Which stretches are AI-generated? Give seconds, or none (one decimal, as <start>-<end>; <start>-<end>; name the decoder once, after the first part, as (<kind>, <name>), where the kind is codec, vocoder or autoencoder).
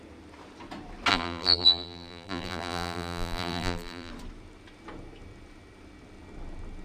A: 1.1-4.1 (vocoder, BigVGAN v2)